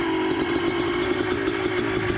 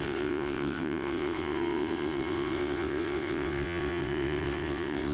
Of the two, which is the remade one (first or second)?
second